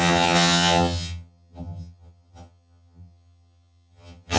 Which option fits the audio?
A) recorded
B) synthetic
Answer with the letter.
B